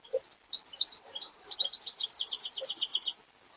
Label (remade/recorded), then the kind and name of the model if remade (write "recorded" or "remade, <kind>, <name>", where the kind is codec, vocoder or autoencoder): recorded